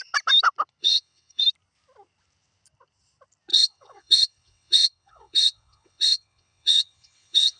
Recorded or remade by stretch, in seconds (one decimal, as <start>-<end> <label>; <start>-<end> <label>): 0.0-0.8 recorded; 0.8-1.4 remade; 1.4-3.5 recorded; 3.5-7.6 remade